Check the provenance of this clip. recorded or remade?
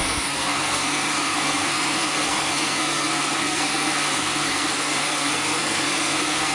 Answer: remade